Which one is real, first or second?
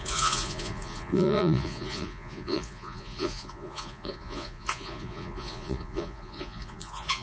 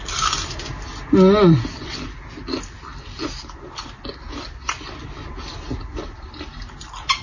second